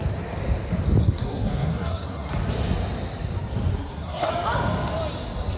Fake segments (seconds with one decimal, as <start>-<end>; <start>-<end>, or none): 1.0-2.3; 3.7-4.3